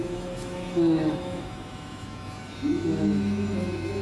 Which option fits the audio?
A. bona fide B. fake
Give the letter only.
B